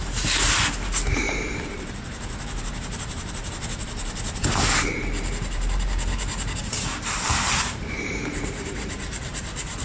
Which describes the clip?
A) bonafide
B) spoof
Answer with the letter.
B